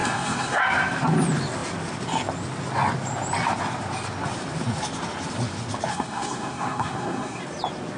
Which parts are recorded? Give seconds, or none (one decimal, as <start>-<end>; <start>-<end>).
0.6-5.9; 7.4-8.0